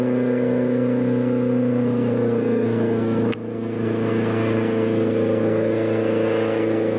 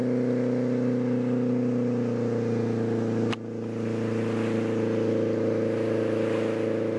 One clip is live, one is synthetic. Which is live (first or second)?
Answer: second